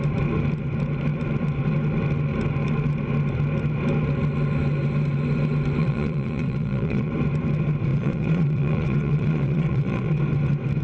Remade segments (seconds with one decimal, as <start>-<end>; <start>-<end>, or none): 5.8-7.1; 7.9-10.2